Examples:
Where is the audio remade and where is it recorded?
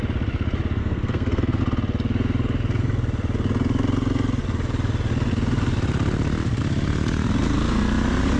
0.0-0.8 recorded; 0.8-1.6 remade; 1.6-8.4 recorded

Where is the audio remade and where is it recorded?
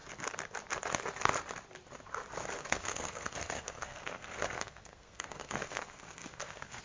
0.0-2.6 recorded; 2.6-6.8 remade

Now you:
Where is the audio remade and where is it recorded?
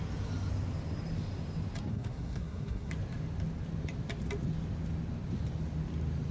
0.0-1.9 recorded; 1.9-2.9 remade; 2.9-6.3 recorded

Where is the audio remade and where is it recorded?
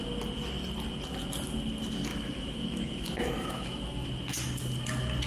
0.0-2.1 recorded; 2.1-4.1 remade; 4.1-5.3 recorded